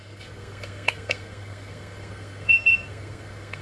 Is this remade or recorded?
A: remade